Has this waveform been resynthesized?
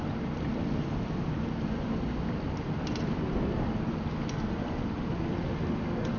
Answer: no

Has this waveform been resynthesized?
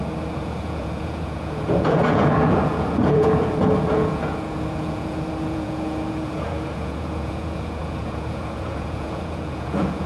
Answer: yes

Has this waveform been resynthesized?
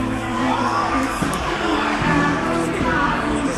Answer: yes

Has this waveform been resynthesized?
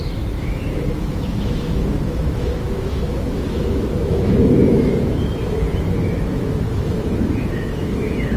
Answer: yes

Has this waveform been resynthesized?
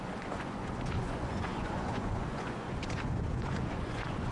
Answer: yes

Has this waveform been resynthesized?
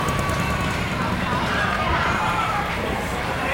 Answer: yes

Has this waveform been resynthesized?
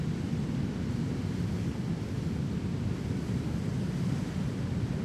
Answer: no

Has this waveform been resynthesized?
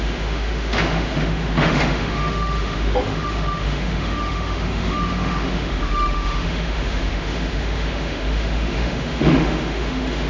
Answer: yes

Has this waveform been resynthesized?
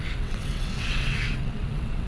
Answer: yes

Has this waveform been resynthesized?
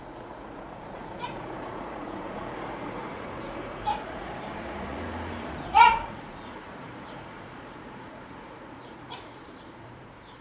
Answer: yes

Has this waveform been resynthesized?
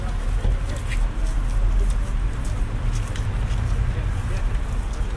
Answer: no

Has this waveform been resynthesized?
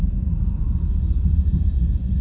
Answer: yes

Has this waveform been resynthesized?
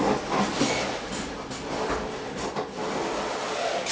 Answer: no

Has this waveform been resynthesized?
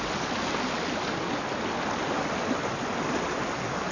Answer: no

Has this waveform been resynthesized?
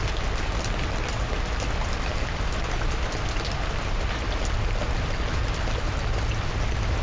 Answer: no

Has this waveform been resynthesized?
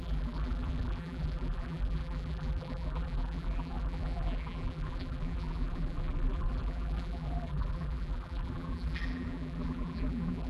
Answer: yes